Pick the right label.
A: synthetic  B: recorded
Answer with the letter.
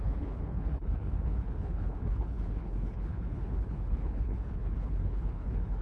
A